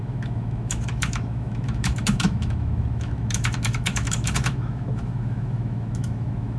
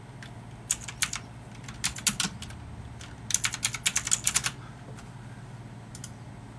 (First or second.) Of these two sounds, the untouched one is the second